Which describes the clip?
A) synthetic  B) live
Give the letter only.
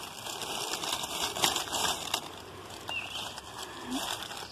B